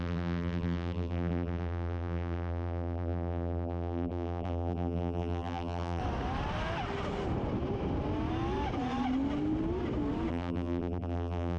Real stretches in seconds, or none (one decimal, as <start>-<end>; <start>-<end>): 6.0-10.3